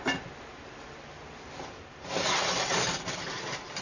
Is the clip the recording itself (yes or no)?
yes